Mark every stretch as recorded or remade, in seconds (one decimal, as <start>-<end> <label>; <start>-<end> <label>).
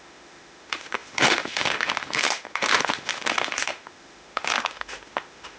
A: 0.0-5.6 remade